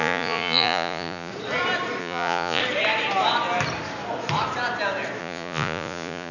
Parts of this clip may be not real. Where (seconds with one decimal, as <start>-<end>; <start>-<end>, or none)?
0.0-1.3; 2.0-2.6; 5.2-6.3